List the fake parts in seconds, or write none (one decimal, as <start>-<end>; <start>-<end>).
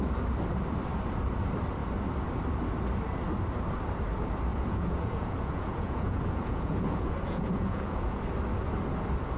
4.5-8.2